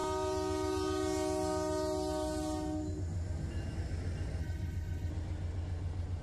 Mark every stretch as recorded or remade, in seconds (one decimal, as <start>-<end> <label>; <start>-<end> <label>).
0.0-4.4 recorded; 4.4-5.1 remade; 5.1-6.2 recorded